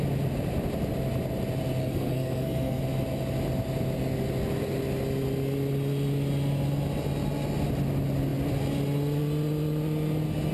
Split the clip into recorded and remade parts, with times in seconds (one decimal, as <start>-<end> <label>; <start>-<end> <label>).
0.0-1.8 recorded; 1.8-2.8 remade; 2.8-10.5 recorded

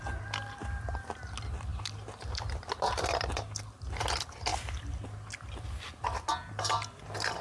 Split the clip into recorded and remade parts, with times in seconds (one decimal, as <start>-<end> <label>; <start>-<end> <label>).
0.0-7.4 recorded